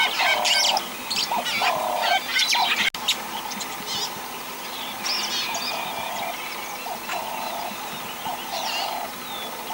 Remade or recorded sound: recorded